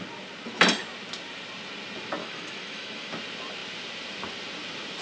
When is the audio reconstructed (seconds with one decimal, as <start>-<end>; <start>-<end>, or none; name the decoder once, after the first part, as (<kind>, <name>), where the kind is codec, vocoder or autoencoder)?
2.2-3.1 (autoencoder, DAC-VAE)